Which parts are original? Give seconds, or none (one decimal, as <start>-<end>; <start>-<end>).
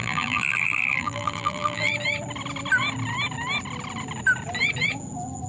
1.9-5.5